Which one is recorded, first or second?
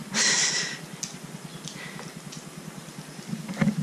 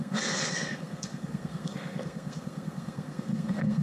first